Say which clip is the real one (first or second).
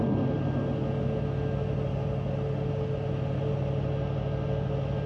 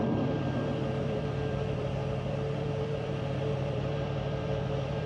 first